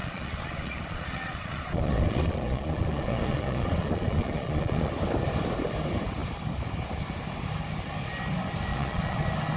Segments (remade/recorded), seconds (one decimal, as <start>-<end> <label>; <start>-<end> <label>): 0.0-4.9 remade; 4.9-8.7 recorded; 8.7-9.2 remade; 9.2-9.6 recorded